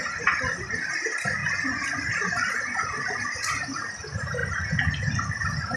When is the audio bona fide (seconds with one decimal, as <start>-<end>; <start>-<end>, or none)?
0.0-5.8